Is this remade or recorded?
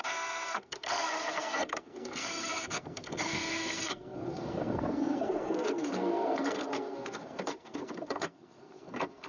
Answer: remade